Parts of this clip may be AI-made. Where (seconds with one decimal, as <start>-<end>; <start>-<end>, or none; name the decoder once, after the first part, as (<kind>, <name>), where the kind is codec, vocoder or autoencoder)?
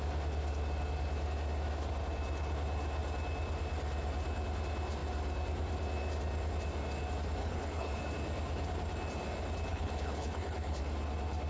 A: 7.4-8.0 (codec, HILCodec); 9.7-10.8